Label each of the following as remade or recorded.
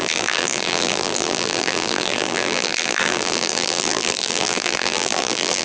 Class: remade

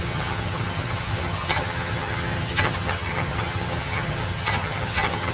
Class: remade